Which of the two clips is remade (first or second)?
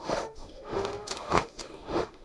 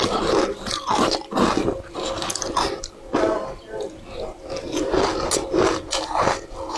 first